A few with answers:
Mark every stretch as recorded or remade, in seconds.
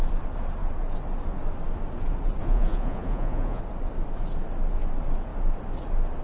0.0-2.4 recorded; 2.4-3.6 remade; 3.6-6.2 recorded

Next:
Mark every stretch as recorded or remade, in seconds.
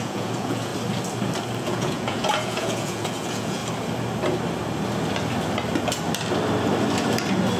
0.0-0.7 remade; 0.7-1.6 recorded; 1.6-3.6 remade; 3.6-7.6 recorded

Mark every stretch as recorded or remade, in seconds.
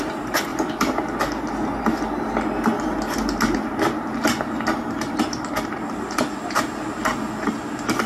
0.0-8.1 recorded